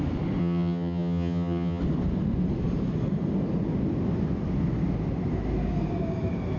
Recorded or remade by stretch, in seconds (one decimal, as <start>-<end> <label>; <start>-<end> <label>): 0.0-0.4 recorded; 0.4-1.8 remade; 1.8-6.6 recorded